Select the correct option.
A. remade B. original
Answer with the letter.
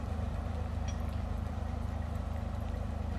B